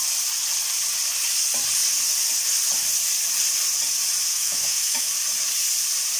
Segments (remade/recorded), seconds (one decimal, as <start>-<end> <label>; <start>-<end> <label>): 0.0-4.3 recorded; 4.3-5.1 remade; 5.1-6.2 recorded